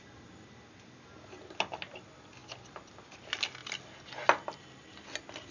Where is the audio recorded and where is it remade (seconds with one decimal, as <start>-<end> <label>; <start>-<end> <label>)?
0.0-5.5 recorded